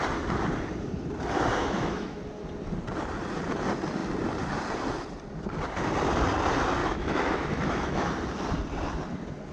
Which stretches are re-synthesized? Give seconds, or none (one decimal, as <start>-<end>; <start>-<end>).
1.6-2.2; 6.8-8.1